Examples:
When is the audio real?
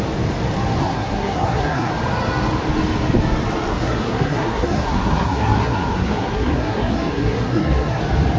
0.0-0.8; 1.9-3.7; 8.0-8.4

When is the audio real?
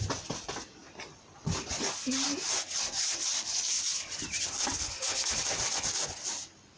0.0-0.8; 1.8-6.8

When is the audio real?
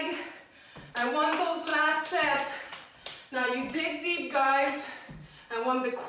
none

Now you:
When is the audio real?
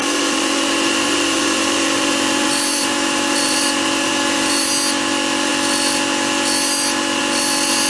4.7-7.9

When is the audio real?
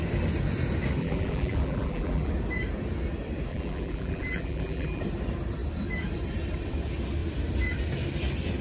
0.0-1.0; 2.3-3.5; 5.0-8.6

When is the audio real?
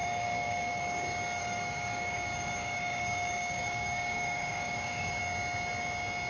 0.8-1.4; 5.2-6.3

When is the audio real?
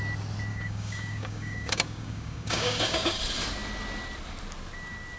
0.0-0.5; 3.2-5.2